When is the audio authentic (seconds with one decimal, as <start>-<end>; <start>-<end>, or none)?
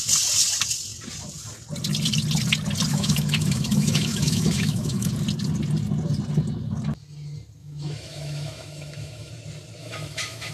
0.0-2.9; 5.1-7.6; 9.3-9.8